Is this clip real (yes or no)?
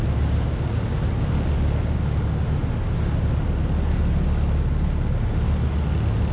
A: yes